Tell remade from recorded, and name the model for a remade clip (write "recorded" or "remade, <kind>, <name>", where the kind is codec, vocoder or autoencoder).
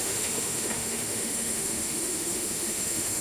remade, autoencoder, DAC-VAE